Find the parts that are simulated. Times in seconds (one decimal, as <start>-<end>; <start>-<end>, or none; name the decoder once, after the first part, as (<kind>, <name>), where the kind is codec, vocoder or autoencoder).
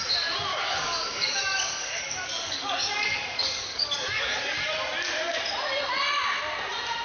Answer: 0.5-4.7 (codec, DAC)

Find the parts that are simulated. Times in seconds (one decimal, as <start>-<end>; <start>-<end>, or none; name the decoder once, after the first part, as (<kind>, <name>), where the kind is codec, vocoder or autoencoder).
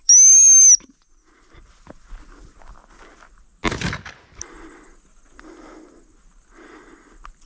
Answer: none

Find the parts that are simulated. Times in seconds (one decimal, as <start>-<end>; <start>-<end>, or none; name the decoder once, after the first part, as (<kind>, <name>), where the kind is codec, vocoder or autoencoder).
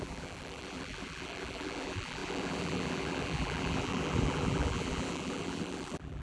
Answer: 0.0-6.2 (vocoder, BigVGAN v2)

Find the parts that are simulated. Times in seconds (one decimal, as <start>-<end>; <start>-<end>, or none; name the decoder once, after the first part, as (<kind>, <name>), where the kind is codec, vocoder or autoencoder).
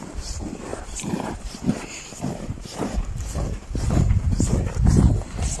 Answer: 0.7-3.0 (vocoder, BigVGAN v2)